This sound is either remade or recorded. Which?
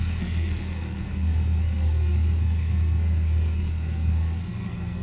remade